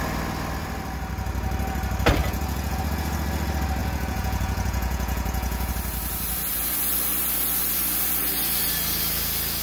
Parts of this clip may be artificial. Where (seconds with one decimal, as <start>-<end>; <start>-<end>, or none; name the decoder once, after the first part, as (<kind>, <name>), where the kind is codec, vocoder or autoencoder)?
2.2-2.8 (vocoder, Vocos); 3.8-5.7